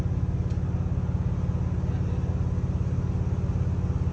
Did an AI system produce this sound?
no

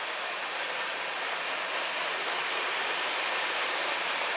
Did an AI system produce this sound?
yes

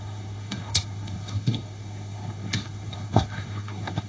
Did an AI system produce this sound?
yes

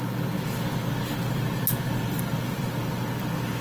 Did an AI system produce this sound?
no